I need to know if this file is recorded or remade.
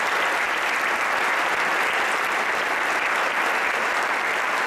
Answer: recorded